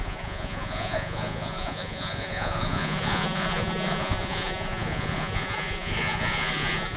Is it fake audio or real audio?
fake